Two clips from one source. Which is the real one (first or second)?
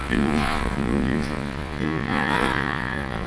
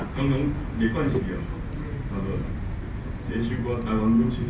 second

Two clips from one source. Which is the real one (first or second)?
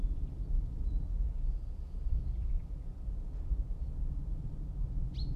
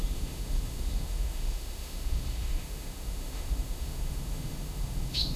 first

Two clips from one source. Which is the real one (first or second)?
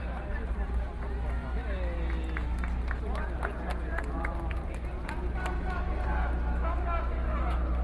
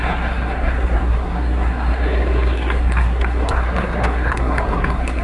first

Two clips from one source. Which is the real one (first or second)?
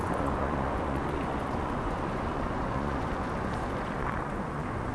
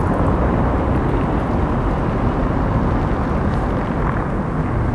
second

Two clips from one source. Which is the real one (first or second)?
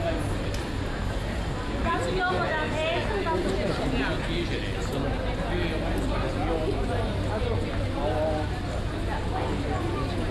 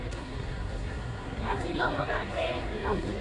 first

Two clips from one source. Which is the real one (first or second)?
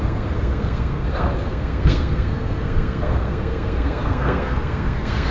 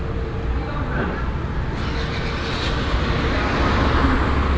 second